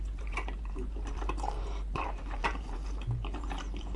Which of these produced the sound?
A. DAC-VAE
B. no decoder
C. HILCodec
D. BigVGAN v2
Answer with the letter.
D